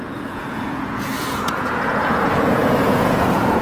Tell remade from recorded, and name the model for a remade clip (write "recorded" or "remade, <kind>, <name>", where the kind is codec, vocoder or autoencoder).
remade, vocoder, Vocos